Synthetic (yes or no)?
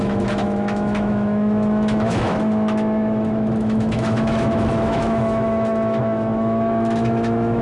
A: yes